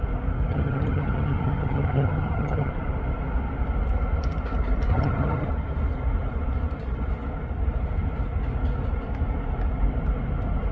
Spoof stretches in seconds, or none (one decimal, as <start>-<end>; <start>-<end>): 0.5-2.7; 4.9-5.5